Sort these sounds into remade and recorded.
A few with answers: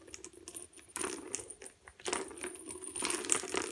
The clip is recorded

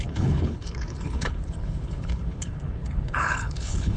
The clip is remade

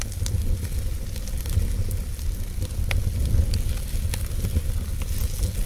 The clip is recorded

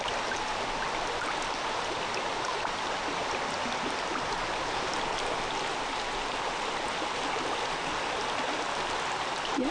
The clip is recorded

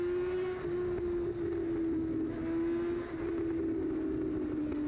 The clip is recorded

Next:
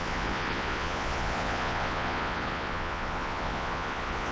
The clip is remade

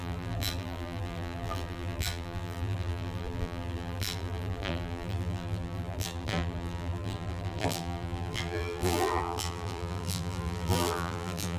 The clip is remade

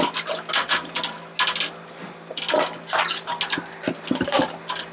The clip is recorded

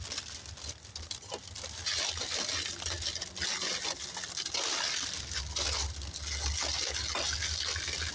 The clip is recorded